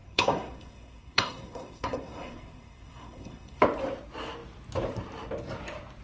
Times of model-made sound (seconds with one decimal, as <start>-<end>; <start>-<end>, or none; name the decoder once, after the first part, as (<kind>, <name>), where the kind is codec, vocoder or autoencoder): 0.0-3.6 (codec, SNAC)